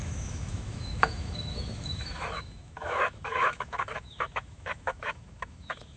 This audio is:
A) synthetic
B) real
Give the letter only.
A